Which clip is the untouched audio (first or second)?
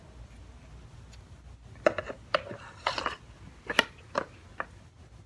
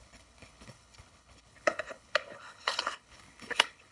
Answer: first